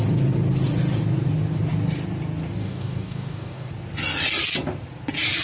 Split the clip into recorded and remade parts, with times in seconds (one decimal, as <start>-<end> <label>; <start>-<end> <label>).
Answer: 0.0-2.6 recorded; 2.6-3.7 remade; 3.7-5.4 recorded